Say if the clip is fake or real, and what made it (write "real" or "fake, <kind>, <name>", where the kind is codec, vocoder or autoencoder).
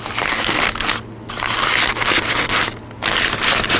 real